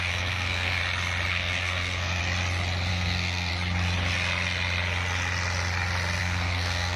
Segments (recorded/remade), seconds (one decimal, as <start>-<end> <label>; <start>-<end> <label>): 0.0-0.8 remade; 0.8-1.3 recorded; 1.3-2.2 remade; 2.2-2.9 recorded; 2.9-3.5 remade; 3.5-6.2 recorded; 6.2-7.0 remade